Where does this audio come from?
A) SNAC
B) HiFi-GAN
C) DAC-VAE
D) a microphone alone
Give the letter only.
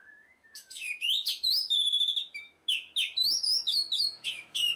C